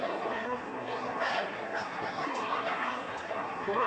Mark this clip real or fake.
fake